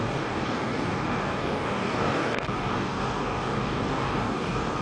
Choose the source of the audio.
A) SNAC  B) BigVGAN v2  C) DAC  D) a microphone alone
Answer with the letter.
C